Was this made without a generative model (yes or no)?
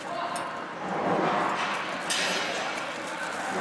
yes